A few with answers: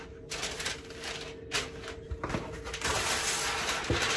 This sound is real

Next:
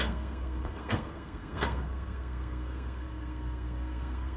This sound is fake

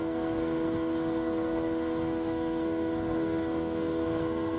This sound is fake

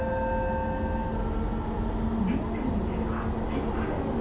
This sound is real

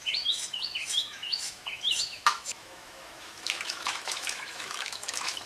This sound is fake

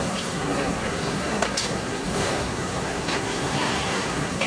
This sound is fake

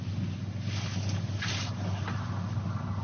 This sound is real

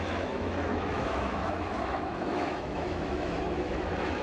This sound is fake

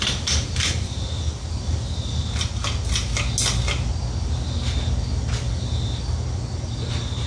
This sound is real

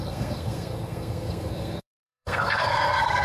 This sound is fake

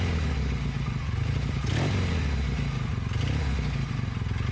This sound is real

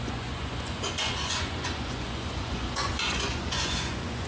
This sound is fake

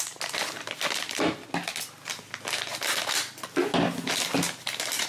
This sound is real